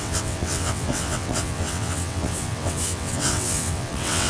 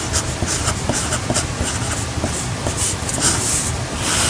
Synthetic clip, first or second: first